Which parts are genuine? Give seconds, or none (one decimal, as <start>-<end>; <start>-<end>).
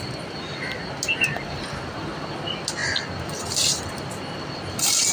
0.0-5.1